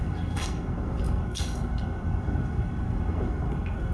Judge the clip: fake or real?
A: fake